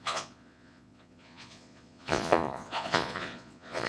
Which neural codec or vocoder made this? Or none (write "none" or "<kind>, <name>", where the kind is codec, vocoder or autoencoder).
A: vocoder, Vocos